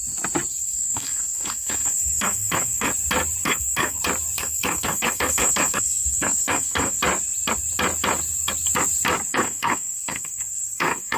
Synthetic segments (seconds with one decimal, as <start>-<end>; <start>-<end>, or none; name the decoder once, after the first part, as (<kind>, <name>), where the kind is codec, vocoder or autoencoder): 0.5-2.9 (codec, SNAC); 3.4-4.0; 4.4-7.0; 9.3-11.2